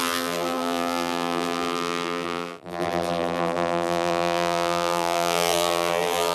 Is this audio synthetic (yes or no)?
yes